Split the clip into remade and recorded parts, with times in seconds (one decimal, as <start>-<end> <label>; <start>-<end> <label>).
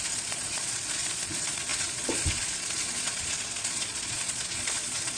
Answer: 0.0-5.2 remade